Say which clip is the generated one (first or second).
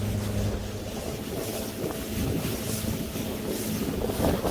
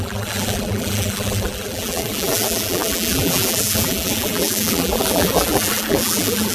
second